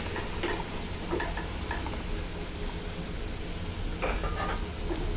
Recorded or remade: recorded